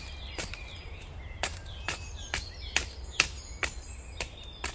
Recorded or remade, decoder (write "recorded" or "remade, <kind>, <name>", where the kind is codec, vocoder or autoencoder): recorded